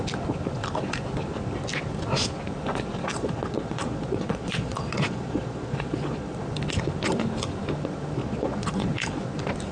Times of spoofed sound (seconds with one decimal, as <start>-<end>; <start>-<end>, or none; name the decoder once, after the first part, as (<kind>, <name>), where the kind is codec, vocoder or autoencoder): 3.1-6.4 (vocoder, Vocos); 8.2-9.2